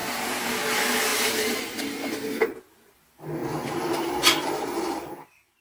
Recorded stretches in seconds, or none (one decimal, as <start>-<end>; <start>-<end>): 0.5-1.1; 1.8-3.4; 5.1-5.6